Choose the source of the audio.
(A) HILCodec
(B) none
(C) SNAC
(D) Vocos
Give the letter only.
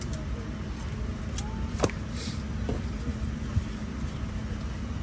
B